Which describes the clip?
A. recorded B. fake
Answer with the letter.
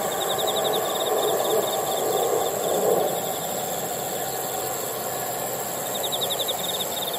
A